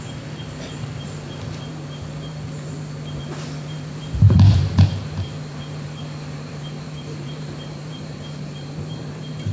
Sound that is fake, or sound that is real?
fake